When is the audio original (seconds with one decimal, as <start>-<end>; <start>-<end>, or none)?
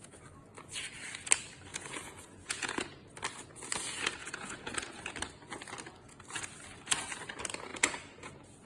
0.0-1.7; 3.1-4.2; 5.1-7.7